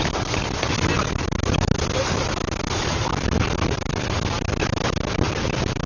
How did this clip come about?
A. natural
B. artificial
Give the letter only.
A